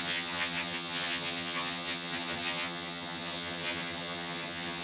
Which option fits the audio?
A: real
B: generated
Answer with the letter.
B